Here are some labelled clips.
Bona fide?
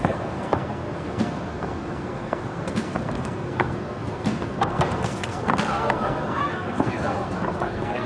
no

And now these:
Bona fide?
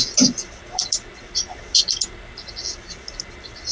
yes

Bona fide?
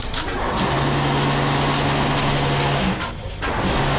yes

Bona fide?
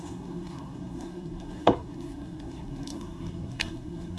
no